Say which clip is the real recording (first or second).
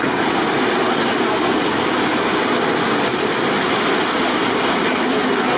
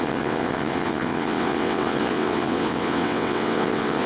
first